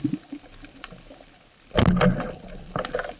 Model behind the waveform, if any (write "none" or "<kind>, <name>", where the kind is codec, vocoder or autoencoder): none